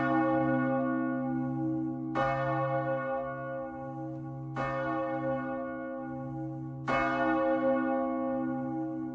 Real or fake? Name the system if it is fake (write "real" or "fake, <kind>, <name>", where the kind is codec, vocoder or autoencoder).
real